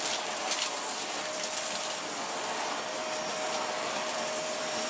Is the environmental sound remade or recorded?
remade